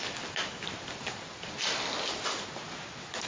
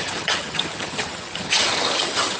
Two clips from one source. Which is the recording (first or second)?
first